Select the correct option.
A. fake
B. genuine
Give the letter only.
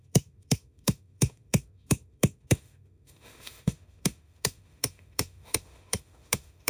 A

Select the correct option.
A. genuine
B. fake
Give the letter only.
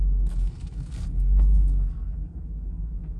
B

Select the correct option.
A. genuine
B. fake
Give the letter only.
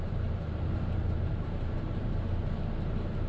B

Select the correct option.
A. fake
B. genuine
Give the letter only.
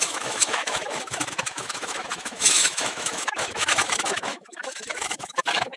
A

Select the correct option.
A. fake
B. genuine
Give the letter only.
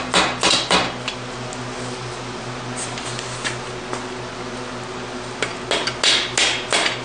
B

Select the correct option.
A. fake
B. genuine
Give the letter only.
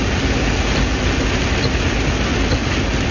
B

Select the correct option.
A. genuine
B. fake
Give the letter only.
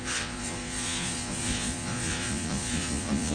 B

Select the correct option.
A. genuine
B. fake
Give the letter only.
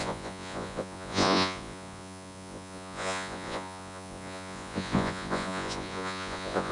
B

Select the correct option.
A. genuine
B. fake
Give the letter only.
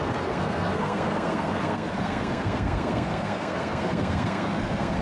B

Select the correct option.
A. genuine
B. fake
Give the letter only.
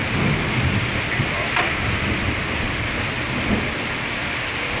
A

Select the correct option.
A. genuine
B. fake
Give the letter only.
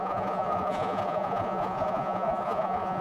B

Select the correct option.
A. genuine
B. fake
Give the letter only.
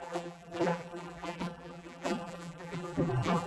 B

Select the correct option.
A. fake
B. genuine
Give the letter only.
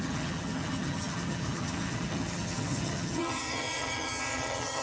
A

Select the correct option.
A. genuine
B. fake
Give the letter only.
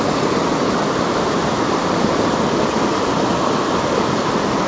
A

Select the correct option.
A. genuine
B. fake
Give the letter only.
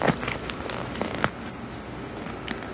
A